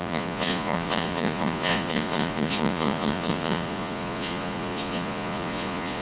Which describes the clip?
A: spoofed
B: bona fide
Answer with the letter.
A